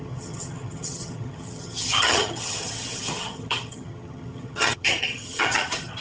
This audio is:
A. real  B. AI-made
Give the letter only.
B